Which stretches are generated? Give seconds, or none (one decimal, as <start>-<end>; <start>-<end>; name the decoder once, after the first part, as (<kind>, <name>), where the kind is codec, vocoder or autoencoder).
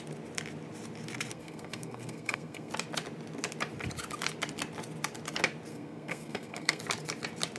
1.3-2.7 (codec, SNAC); 5.7-6.8